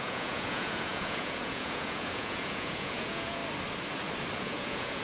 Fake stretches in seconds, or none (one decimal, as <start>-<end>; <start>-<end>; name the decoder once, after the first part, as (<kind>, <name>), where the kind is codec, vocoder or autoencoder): 0.0-3.4 (vocoder, Vocos); 4.4-5.0